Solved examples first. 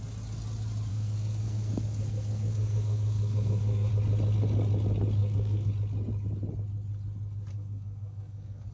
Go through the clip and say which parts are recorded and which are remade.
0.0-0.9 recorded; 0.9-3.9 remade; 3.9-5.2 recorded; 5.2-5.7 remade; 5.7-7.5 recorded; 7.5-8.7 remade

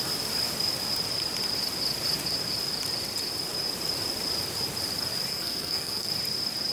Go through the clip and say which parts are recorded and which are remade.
0.0-5.3 recorded; 5.3-6.1 remade; 6.1-6.7 recorded

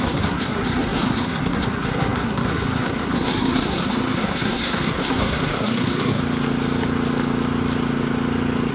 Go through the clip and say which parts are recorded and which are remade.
0.0-6.2 remade; 6.2-8.7 recorded

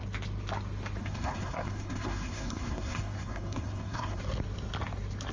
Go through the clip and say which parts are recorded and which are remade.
0.0-1.0 recorded; 1.0-4.2 remade; 4.2-5.3 recorded

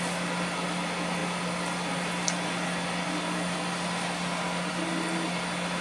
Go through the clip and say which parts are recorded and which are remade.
0.0-5.8 recorded